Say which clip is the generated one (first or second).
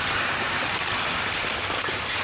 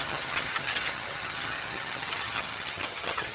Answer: second